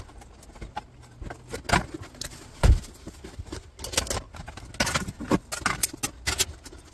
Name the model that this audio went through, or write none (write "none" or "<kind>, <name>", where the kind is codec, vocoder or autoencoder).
none